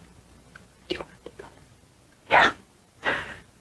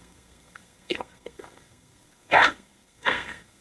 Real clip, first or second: first